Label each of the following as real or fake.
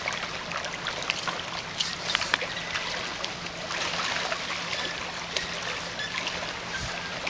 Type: real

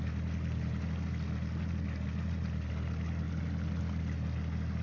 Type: real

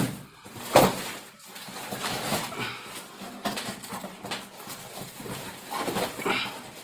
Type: fake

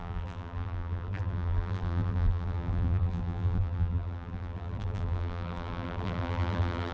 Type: fake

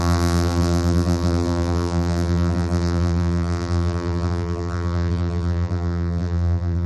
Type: fake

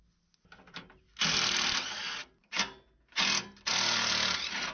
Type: real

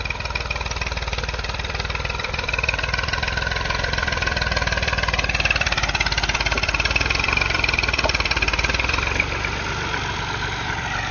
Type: fake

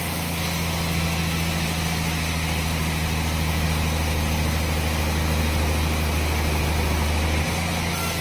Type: real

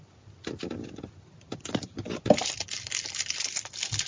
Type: fake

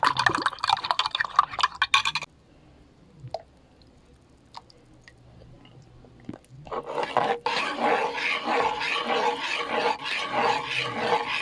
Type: real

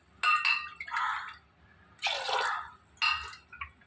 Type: real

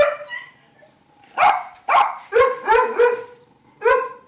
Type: fake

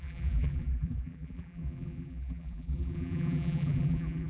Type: fake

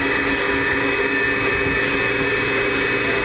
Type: real